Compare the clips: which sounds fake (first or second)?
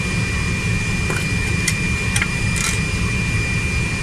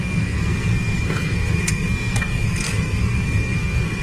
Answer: second